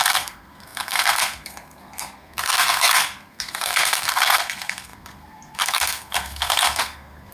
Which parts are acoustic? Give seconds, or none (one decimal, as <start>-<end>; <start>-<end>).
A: none